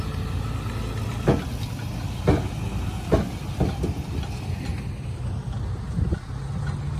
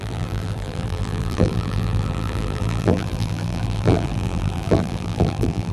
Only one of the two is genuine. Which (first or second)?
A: first